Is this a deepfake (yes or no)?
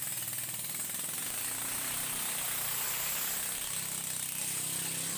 no